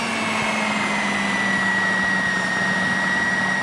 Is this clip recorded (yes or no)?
yes